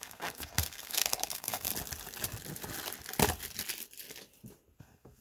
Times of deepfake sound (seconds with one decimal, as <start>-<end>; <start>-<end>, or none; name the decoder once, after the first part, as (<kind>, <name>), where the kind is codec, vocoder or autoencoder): 0.0-1.7 (codec, SNAC); 4.8-5.2